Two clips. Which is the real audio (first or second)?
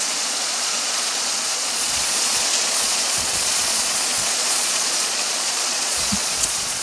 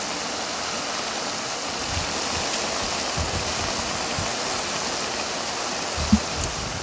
second